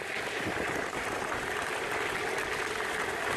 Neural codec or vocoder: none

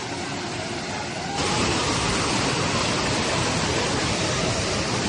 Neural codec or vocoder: none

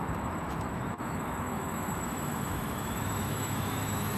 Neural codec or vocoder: autoencoder, DAC-VAE